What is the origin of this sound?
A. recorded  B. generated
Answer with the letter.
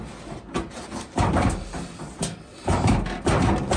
A